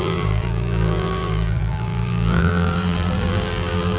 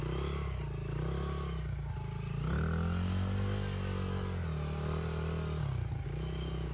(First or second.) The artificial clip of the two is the first